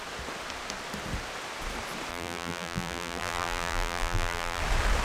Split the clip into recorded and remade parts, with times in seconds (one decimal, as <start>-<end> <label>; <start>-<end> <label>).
0.0-2.1 recorded; 2.1-4.6 remade; 4.6-5.0 recorded